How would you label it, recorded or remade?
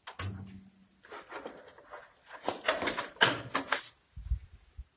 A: recorded